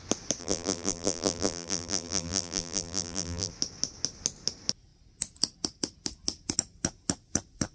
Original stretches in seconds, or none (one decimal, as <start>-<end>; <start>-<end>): 0.0-0.4; 3.5-7.7